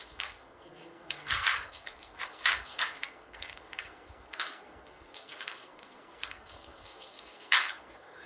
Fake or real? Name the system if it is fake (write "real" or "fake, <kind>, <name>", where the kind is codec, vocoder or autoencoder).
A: fake, codec, SNAC